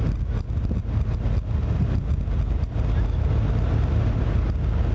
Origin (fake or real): real